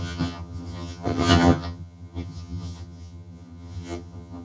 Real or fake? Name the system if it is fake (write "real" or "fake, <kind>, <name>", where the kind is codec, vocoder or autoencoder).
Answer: fake, vocoder, HiFi-GAN